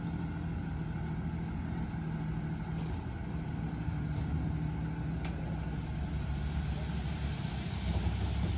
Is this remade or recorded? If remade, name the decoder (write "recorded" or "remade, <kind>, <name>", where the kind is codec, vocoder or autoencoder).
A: recorded